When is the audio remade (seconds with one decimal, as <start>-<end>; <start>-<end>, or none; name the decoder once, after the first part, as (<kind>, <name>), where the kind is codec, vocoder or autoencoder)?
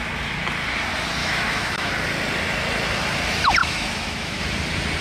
1.2-1.9 (autoencoder, DAC-VAE); 3.6-4.4